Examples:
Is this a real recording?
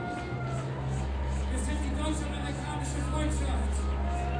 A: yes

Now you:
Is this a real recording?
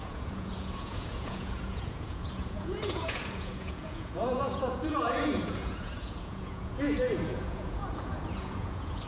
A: no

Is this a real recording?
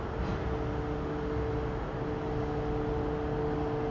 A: yes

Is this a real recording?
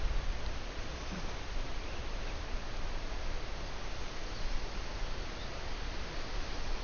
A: yes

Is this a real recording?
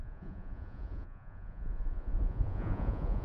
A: no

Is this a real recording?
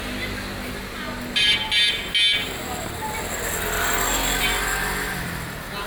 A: yes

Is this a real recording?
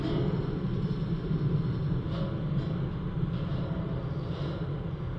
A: yes